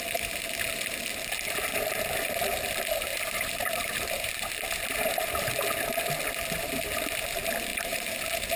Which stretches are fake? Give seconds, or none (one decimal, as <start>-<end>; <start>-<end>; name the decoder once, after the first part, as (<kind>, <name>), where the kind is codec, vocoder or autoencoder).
3.1-4.3 (vocoder, BigVGAN v2); 7.7-8.2